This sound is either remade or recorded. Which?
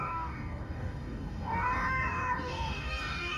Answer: remade